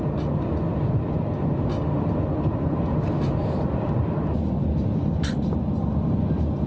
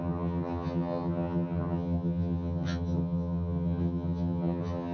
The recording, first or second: first